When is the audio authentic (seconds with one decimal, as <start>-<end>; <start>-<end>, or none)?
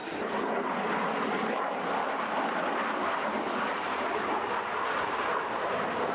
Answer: 0.0-6.1